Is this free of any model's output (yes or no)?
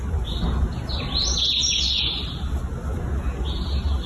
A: yes